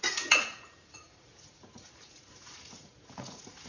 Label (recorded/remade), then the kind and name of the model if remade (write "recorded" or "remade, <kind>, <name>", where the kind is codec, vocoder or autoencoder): remade, vocoder, Vocos